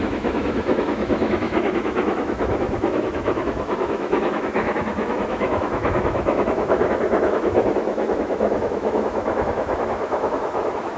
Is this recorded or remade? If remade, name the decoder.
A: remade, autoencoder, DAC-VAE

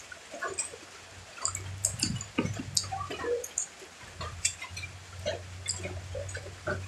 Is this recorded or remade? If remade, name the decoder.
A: recorded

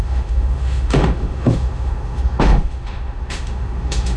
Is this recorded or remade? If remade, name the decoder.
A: remade, autoencoder, DAC-VAE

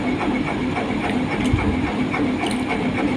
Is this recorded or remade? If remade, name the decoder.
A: recorded